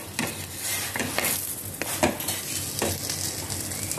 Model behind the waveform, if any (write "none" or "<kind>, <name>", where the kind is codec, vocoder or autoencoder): none